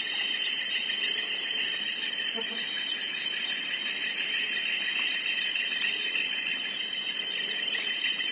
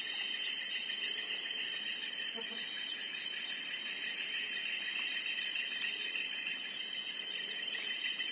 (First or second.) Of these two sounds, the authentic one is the second